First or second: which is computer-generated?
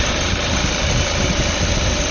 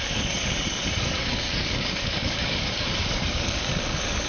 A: second